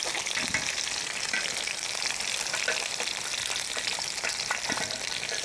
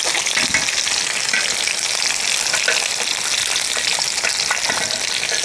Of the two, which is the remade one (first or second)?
first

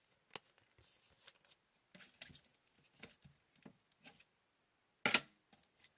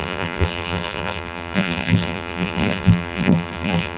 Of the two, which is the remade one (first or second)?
second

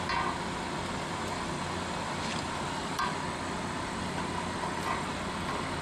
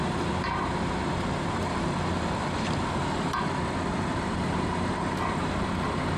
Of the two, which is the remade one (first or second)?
second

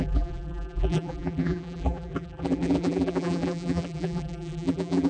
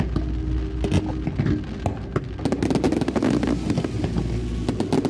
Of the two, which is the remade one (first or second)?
first